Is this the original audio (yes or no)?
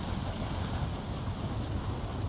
yes